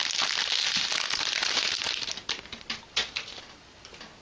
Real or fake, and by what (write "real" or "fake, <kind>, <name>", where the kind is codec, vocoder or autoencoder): real